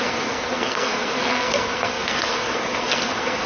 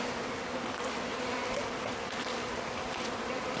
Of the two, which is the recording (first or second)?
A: second